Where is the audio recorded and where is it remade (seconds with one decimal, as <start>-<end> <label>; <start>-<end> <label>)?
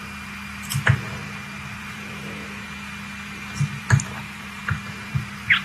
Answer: 0.0-1.0 remade; 1.0-1.8 recorded; 1.8-2.4 remade; 2.4-3.8 recorded; 3.8-4.6 remade; 4.6-5.1 recorded; 5.1-5.6 remade